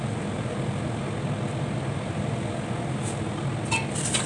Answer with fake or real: real